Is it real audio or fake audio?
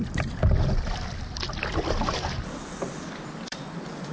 fake